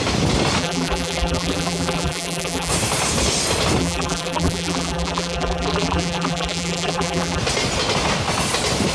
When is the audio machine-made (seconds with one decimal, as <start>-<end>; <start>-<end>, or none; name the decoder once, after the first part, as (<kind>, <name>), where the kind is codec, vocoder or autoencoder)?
0.6-2.7 (vocoder, BigVGAN v2); 3.8-7.4